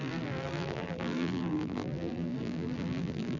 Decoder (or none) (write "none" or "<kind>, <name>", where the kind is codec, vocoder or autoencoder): vocoder, BigVGAN v2